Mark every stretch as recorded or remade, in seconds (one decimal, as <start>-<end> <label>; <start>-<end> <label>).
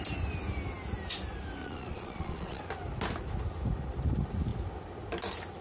0.0-1.6 recorded; 1.6-2.6 remade; 2.6-5.6 recorded